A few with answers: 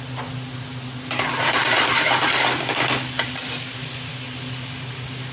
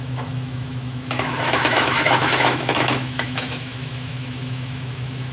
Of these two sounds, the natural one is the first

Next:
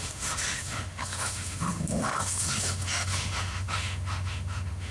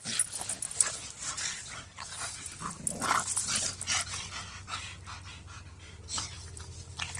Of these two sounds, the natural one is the second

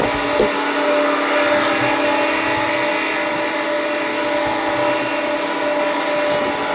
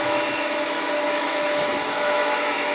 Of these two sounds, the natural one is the first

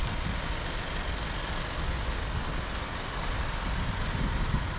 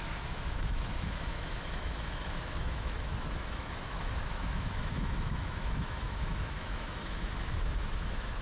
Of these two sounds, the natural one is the first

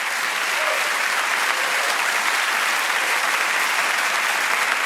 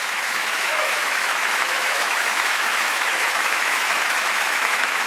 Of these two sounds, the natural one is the first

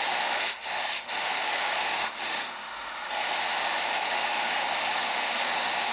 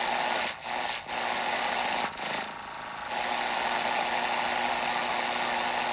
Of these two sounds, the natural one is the second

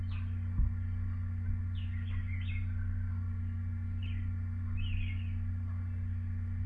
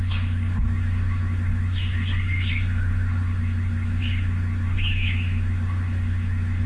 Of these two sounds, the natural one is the first